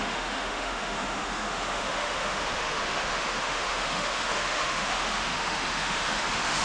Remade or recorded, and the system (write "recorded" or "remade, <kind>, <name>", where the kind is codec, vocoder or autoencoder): remade, autoencoder, DAC-VAE